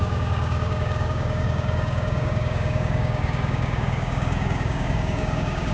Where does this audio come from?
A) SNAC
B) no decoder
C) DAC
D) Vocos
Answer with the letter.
C